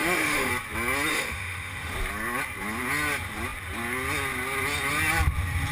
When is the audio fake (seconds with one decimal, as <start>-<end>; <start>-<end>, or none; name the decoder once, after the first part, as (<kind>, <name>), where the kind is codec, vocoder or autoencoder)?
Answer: 0.0-0.5 (autoencoder, DAC-VAE); 1.1-1.9